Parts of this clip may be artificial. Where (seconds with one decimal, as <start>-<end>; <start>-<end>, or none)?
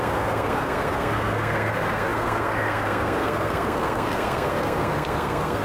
0.0-5.6